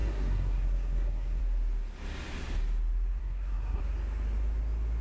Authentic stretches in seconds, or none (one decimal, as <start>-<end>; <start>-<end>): 1.4-3.2; 3.8-5.0